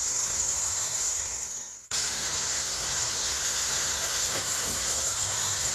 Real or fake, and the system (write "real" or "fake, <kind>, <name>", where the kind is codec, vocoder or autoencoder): fake, codec, SNAC